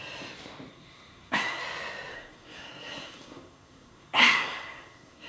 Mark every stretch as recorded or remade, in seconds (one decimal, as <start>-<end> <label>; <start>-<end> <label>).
0.0-0.7 recorded; 0.7-1.6 remade; 1.6-2.1 recorded; 2.1-5.3 remade